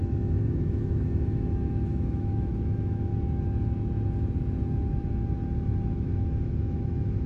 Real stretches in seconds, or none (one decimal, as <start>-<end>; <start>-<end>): 3.1-5.9